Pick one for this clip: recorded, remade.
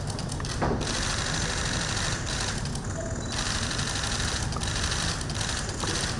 recorded